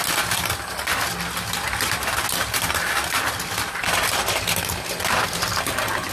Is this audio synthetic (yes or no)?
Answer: no